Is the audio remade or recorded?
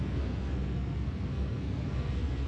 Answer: remade